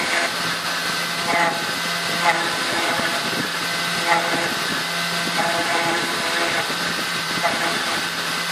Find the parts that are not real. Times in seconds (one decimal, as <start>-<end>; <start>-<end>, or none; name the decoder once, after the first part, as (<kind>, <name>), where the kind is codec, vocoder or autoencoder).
5.6-7.5 (vocoder, BigVGAN v2)